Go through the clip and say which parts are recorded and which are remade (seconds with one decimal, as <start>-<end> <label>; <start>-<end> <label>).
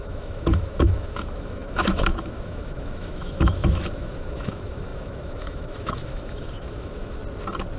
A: 0.0-7.2 remade; 7.2-7.8 recorded